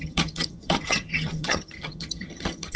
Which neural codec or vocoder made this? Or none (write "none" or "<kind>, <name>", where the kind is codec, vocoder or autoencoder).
vocoder, HiFi-GAN